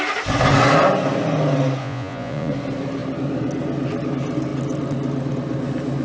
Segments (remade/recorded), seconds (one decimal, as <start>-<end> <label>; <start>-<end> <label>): 0.0-1.8 recorded; 1.8-2.5 remade; 2.5-6.0 recorded